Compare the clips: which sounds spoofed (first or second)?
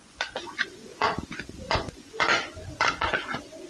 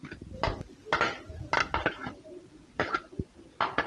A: first